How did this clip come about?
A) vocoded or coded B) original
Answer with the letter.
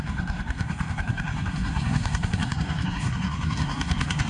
A